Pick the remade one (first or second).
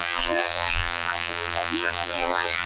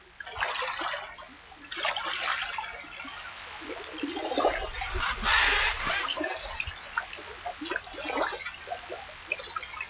first